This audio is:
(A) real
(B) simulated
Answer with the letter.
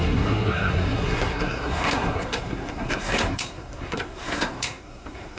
B